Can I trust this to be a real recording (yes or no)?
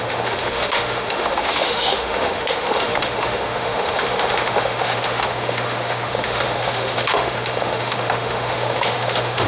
no